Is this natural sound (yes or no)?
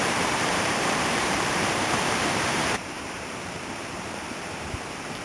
no